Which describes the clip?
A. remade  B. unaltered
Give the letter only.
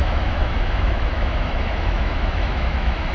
A